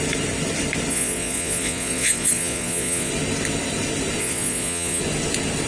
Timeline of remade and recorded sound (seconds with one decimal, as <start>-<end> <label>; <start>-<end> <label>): 0.0-0.9 recorded; 0.9-3.1 remade; 3.1-4.2 recorded; 4.2-5.0 remade; 5.0-5.7 recorded